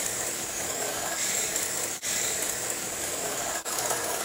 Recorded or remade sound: remade